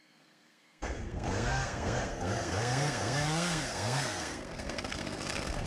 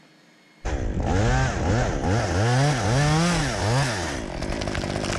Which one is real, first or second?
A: second